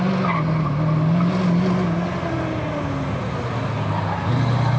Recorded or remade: recorded